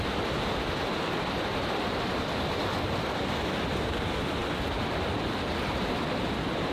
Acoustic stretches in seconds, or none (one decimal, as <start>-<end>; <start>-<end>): 0.0-6.7

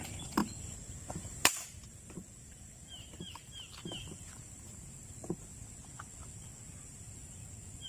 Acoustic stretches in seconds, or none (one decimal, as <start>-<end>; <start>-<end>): 0.4-1.1; 5.5-6.7

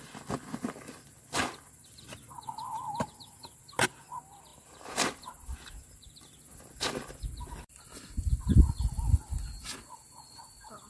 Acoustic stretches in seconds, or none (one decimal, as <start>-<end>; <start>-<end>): 0.0-0.5; 2.6-4.5; 8.4-10.9

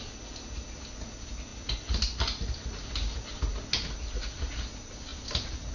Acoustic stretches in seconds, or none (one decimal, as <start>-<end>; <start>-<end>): 0.0-5.7

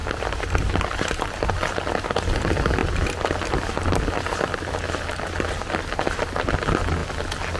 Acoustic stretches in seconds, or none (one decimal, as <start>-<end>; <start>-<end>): 0.0-7.6

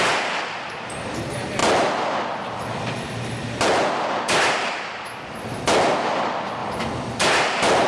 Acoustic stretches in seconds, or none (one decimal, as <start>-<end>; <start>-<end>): 0.0-7.9